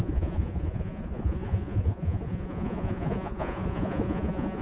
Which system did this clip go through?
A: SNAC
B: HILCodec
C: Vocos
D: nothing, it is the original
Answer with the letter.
C